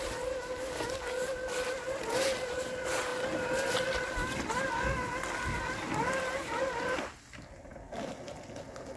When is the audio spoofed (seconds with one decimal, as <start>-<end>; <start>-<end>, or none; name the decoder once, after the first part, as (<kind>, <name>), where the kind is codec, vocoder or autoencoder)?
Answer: none